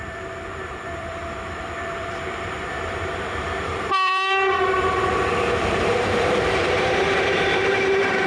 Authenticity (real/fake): fake